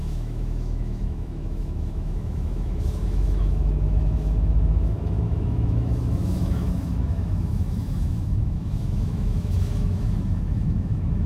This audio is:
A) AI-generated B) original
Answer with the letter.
A